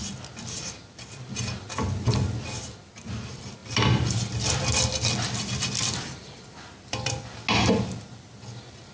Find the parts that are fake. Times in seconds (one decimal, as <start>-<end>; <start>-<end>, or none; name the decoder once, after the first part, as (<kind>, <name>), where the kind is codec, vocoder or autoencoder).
none